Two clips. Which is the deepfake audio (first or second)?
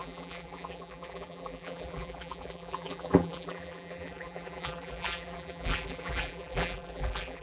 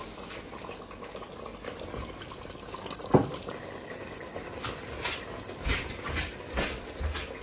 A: first